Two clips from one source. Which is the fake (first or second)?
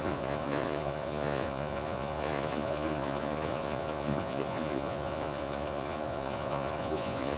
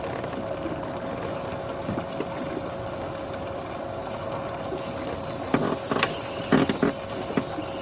first